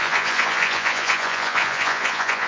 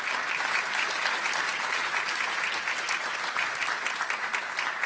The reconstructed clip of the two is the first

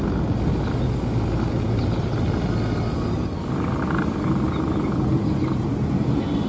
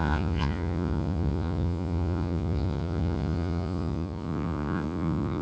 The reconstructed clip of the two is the second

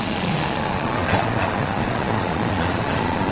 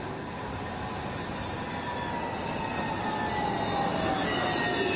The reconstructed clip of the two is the first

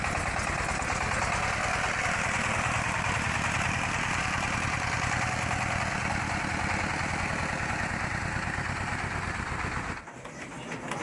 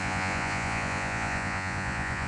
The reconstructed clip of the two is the second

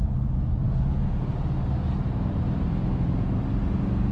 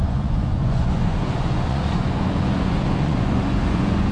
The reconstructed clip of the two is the second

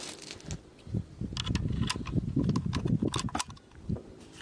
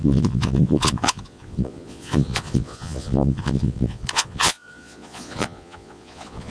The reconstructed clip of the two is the second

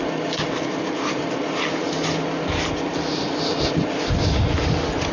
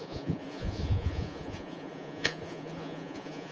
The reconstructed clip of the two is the second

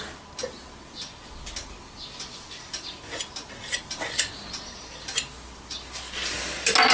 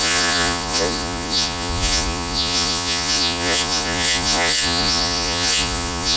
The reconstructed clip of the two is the second